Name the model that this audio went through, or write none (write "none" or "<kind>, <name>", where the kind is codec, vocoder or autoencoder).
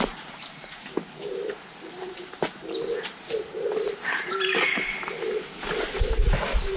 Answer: vocoder, BigVGAN v2